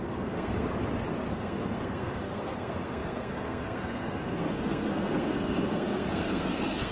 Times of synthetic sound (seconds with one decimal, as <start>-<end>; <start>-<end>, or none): 0.0-0.7; 1.3-6.9